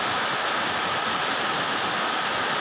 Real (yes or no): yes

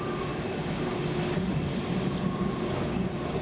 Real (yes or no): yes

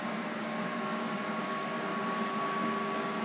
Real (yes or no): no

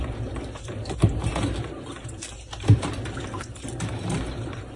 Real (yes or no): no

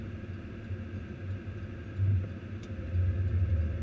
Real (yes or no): yes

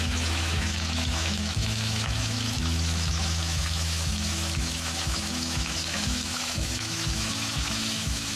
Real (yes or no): no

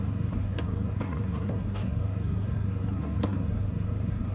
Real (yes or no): no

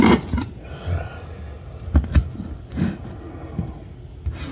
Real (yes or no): yes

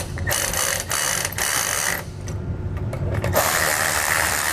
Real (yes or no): no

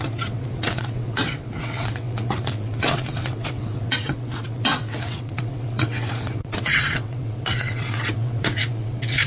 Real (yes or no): no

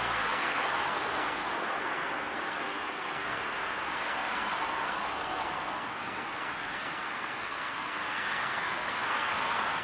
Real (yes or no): no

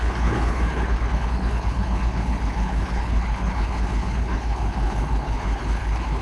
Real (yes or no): no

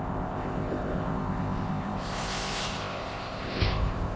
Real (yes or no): no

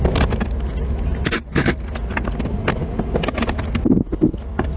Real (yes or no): yes